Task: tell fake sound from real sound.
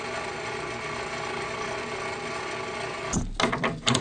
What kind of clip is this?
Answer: real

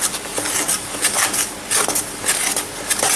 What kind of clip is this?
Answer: real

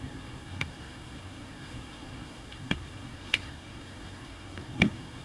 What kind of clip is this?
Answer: fake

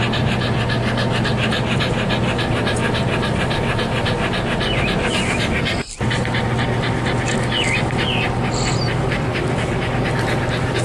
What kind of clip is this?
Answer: real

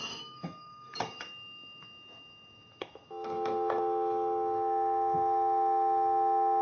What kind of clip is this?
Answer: fake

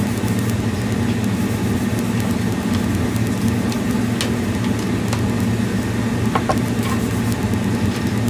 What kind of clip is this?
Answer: real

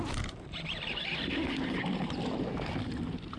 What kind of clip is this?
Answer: real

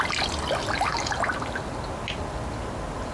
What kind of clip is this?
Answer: real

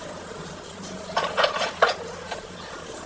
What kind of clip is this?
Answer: fake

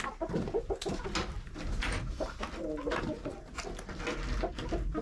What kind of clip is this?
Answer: real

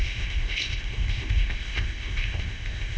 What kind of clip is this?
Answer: fake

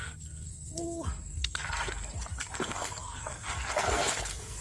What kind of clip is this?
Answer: fake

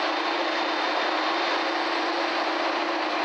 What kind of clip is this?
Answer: real